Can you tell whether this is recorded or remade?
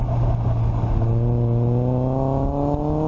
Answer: recorded